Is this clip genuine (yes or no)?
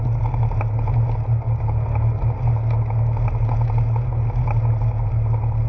yes